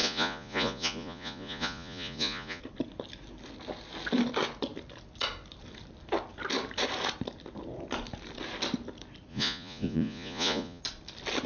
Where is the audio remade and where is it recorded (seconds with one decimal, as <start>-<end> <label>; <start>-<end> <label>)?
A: 0.0-2.6 remade; 2.6-9.3 recorded; 9.3-10.8 remade; 10.8-11.5 recorded